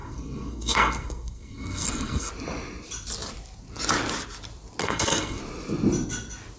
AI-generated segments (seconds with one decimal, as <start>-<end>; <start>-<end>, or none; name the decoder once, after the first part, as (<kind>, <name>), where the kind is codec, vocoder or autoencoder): 0.0-2.3 (codec, SNAC); 4.8-5.4